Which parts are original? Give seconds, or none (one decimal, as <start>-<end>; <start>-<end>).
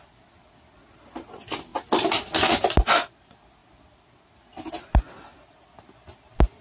0.0-6.6